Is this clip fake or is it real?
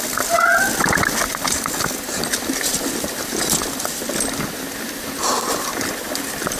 real